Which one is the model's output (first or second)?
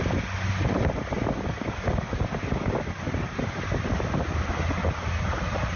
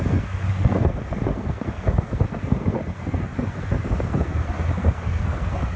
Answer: second